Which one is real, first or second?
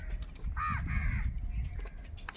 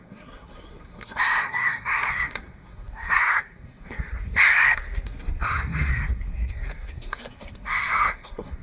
first